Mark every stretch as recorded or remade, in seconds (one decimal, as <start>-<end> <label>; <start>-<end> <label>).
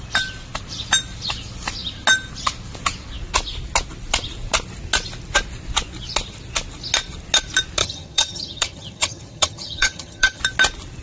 0.0-7.8 recorded; 7.8-10.4 remade; 10.4-11.0 recorded